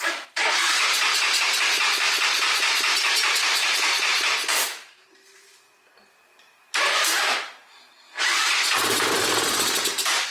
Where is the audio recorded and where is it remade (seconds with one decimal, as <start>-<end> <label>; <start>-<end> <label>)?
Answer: 0.0-10.3 recorded